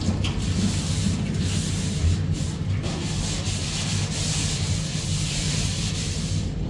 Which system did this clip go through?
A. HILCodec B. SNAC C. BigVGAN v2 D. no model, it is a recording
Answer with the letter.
C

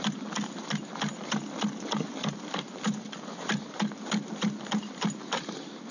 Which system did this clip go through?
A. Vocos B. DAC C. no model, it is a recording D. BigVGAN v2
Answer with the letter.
C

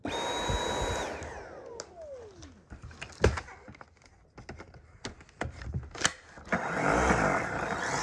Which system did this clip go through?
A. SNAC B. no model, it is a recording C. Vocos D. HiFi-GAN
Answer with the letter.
B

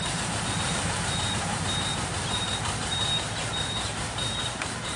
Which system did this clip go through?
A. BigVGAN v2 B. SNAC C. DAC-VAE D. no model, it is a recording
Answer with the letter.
A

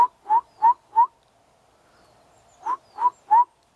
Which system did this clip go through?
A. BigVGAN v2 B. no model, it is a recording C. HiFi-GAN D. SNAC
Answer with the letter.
B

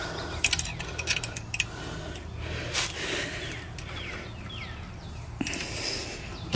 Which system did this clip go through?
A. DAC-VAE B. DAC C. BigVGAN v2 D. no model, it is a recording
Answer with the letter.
D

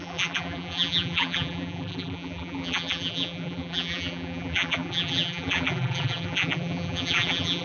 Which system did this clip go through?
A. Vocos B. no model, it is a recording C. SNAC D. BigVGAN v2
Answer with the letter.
D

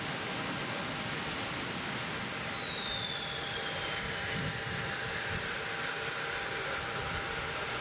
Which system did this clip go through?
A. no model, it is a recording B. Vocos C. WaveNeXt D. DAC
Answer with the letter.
A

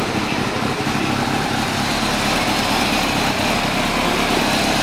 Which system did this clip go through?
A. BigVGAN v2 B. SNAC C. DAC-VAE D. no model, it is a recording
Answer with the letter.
A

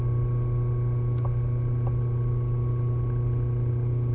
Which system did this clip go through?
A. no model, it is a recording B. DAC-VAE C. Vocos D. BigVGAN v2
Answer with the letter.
A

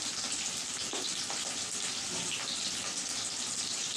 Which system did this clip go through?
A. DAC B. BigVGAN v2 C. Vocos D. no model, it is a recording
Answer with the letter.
B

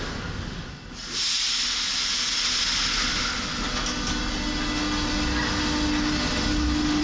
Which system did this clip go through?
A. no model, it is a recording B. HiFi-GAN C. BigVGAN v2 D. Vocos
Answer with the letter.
A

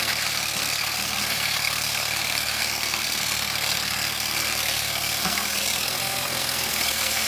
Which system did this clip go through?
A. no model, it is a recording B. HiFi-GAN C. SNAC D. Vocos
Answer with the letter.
C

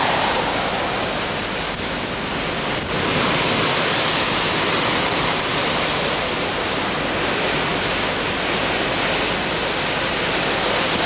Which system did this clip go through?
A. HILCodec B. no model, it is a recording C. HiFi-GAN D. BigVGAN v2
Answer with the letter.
B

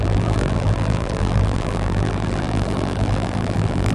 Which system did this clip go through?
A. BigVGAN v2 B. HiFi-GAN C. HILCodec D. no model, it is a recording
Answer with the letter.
A